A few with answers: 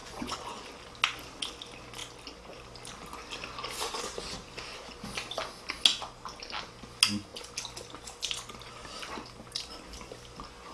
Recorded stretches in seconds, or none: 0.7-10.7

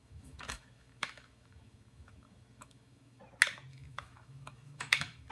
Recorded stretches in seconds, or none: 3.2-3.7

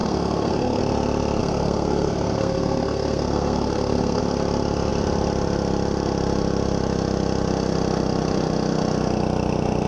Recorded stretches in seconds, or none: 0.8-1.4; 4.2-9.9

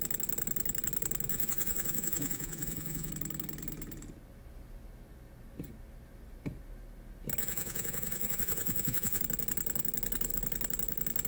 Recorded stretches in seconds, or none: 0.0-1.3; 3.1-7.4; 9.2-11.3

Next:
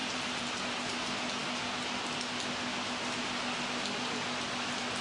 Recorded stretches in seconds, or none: 0.6-5.0

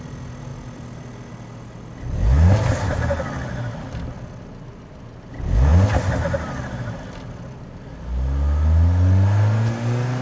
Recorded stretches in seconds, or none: 0.0-10.2

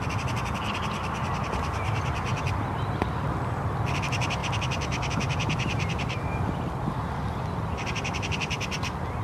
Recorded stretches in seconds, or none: 0.0-9.2